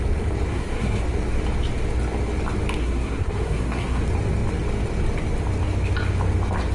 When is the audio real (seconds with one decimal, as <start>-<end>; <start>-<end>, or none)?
0.0-0.5; 1.0-2.8; 4.0-6.7